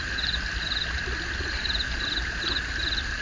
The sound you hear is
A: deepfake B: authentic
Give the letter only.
B